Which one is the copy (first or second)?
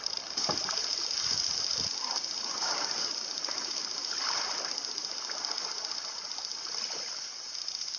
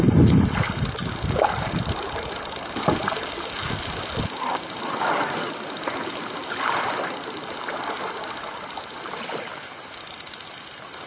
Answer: first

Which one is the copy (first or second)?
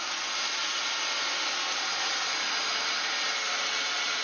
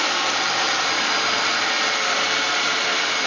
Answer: second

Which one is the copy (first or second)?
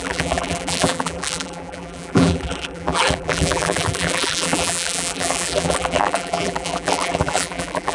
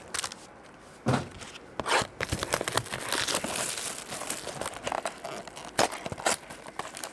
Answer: first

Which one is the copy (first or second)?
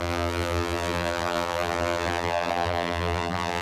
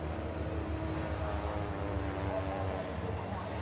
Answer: first